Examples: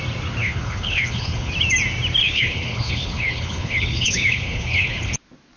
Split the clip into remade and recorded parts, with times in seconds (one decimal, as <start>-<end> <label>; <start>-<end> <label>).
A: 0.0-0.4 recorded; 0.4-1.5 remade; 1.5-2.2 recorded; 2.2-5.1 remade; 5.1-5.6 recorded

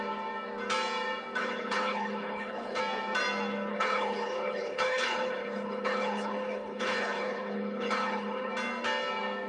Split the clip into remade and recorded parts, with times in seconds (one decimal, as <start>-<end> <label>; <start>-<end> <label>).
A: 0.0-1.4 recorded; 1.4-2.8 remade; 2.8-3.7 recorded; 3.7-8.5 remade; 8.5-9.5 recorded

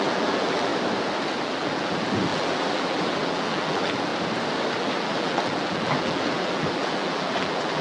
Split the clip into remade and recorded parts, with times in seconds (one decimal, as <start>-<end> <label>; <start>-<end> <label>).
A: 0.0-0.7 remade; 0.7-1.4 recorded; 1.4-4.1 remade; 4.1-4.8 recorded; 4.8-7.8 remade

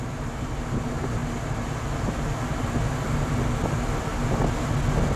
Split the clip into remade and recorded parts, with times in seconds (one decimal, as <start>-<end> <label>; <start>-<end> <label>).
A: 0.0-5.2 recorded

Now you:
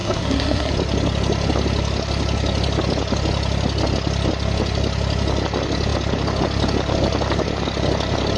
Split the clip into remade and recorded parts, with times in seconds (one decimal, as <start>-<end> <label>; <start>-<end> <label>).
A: 0.0-0.7 remade; 0.7-8.4 recorded